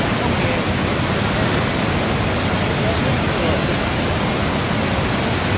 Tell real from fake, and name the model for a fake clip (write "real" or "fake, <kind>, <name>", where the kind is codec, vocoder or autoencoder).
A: real